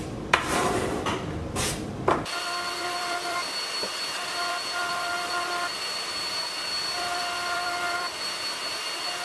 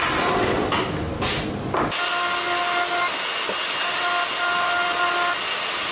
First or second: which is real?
second